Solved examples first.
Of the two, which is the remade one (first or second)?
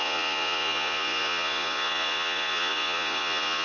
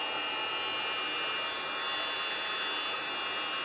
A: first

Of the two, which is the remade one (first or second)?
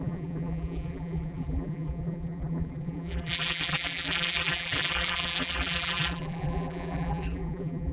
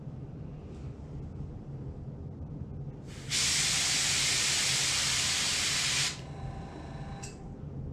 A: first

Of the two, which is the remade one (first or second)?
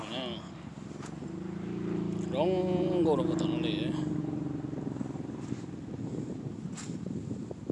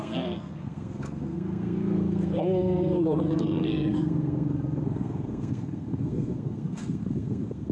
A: second